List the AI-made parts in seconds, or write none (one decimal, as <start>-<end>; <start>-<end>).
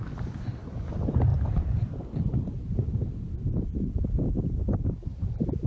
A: none